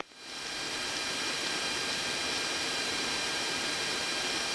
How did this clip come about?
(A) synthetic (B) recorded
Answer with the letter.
A